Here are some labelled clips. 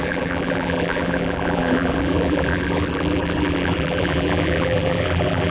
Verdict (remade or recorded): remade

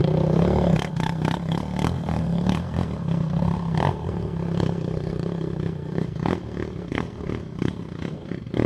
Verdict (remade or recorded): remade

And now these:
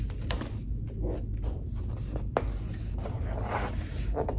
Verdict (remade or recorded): recorded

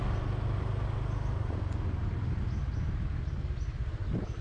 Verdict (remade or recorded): recorded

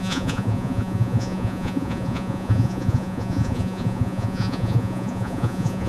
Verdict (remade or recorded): remade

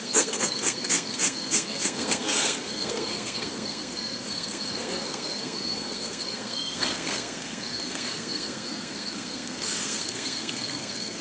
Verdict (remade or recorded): remade